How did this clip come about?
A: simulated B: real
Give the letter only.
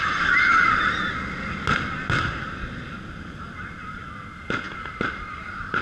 B